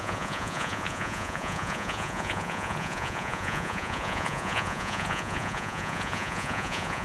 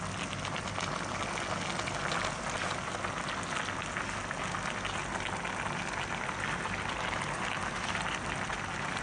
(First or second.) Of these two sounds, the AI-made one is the first